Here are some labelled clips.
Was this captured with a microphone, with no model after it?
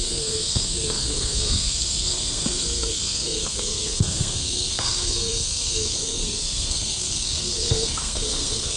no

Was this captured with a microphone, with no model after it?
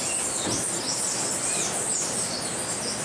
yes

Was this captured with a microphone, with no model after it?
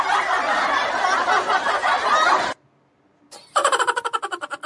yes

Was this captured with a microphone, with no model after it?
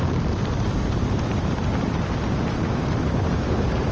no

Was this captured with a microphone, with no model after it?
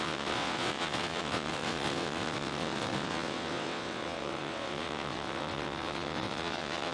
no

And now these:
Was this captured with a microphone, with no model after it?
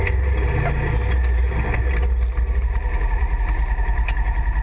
yes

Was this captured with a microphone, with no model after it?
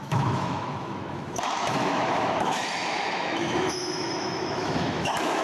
no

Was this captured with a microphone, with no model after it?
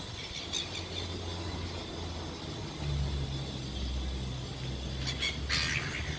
yes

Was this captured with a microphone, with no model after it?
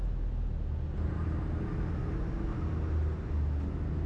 yes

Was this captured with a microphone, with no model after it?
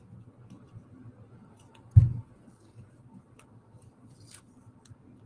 yes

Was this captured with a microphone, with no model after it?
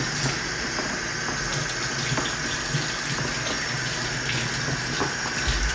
yes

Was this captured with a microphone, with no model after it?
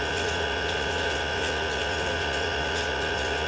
no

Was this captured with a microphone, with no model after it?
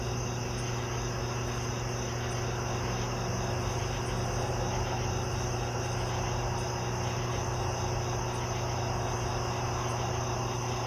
yes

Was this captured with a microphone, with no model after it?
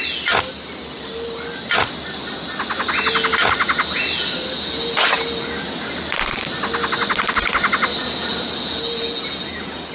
yes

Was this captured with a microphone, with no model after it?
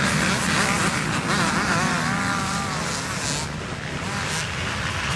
yes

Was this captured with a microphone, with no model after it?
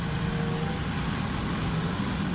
yes